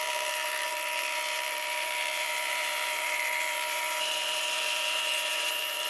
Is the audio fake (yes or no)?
yes